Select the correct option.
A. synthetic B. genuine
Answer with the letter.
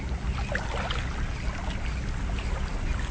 B